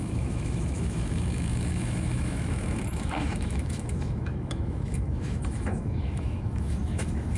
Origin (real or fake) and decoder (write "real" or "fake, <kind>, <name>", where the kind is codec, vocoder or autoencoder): fake, autoencoder, DAC-VAE